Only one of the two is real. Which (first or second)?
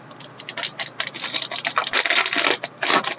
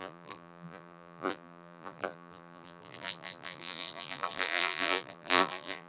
first